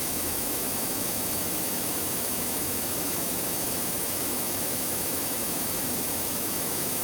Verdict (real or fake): fake